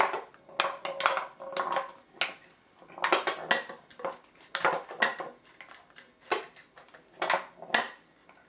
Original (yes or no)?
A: yes